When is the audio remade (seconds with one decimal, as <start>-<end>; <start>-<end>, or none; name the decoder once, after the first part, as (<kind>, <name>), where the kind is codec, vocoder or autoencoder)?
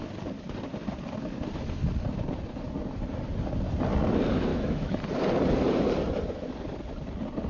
4.5-5.0 (autoencoder, DAC-VAE)